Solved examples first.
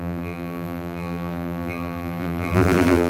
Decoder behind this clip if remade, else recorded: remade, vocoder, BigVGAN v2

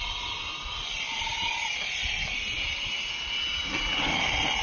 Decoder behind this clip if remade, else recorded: recorded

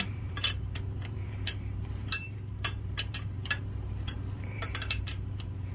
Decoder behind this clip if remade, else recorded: remade, vocoder, BigVGAN v2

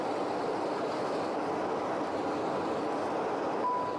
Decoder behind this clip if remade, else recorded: recorded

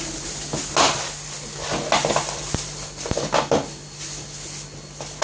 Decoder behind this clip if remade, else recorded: recorded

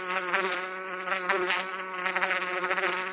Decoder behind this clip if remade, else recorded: recorded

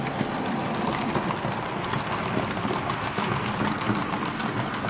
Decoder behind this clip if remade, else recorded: recorded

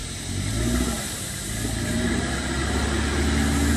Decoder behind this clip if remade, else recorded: recorded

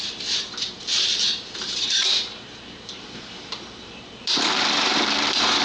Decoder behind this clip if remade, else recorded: remade, vocoder, BigVGAN v2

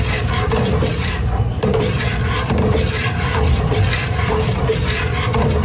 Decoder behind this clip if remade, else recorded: remade, vocoder, BigVGAN v2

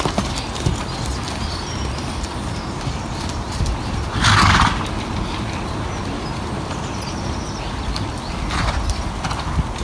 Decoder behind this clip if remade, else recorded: recorded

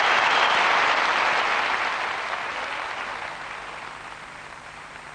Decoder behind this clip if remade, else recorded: remade, vocoder, BigVGAN v2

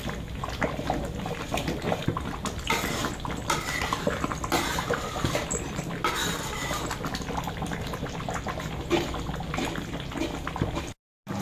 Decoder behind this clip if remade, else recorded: recorded